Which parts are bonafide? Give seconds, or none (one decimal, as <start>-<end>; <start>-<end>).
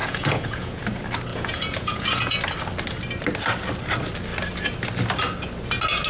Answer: 0.8-1.3; 2.4-6.1